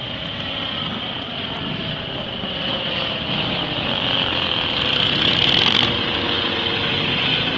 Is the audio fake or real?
real